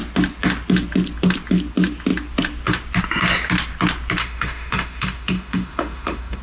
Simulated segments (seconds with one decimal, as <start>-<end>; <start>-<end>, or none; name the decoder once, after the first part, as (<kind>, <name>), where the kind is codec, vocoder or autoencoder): 4.2-6.4 (autoencoder, DAC-VAE)